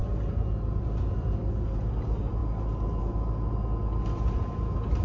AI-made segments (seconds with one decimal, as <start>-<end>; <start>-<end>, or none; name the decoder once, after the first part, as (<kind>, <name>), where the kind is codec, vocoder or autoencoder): none